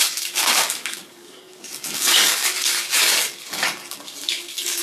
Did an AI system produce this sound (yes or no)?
yes